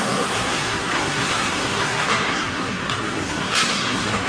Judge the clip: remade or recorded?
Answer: remade